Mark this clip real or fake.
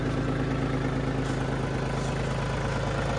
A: real